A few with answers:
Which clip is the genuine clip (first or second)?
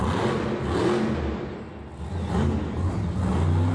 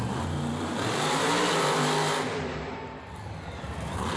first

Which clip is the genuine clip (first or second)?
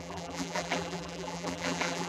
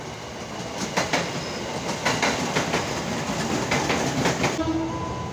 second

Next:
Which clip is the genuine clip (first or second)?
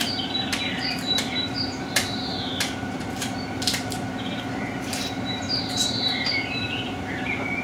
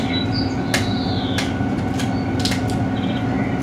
second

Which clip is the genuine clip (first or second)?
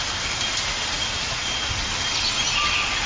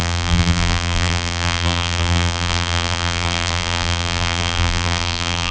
first